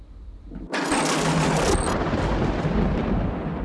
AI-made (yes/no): no